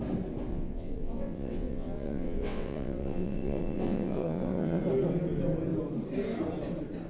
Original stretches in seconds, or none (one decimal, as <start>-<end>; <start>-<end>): 0.0-0.5; 4.8-7.1